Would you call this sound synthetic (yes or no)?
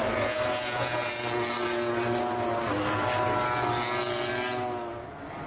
no